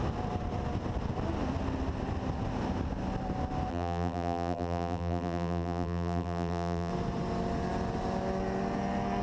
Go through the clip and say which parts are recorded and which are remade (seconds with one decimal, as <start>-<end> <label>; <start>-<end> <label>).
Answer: 0.0-3.7 recorded; 3.7-6.9 remade; 6.9-9.2 recorded